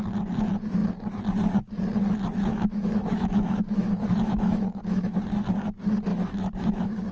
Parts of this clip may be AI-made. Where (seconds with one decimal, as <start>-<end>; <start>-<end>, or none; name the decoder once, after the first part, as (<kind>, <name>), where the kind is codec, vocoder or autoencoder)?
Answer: 2.5-5.2 (autoencoder, DAC-VAE); 6.1-7.1

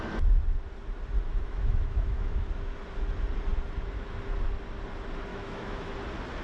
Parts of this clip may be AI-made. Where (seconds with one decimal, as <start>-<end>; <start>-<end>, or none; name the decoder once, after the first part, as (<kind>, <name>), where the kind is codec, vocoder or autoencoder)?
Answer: 1.3-2.5 (autoencoder, DAC-VAE); 5.3-5.9

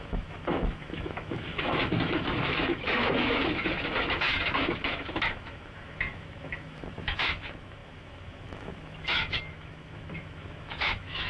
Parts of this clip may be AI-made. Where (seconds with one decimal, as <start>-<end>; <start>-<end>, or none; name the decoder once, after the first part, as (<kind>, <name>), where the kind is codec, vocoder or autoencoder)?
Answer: 0.0-11.3 (autoencoder, DAC-VAE)

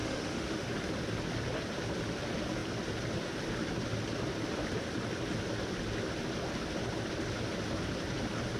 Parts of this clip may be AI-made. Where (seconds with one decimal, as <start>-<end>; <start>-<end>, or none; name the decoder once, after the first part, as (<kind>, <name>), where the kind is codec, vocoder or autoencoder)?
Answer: 0.0-0.7 (autoencoder, DAC-VAE)

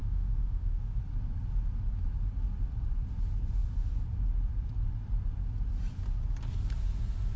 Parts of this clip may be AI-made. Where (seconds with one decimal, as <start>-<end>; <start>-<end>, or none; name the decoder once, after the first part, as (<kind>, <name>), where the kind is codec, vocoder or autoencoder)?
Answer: 0.0-1.0 (autoencoder, DAC-VAE)